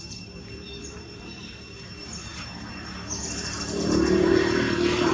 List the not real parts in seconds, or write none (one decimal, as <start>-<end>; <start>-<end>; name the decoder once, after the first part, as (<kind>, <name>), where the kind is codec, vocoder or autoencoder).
0.0-5.1 (vocoder, BigVGAN v2)